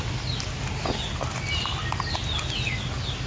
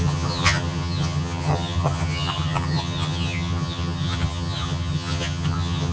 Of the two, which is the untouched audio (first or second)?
first